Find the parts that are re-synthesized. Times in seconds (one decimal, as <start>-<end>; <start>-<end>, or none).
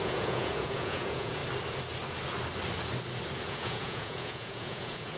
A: 0.0-1.4; 3.4-5.2